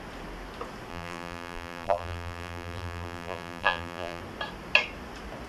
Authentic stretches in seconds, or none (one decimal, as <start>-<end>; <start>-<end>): 0.0-0.9; 4.2-5.5